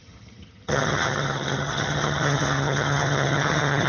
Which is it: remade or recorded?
remade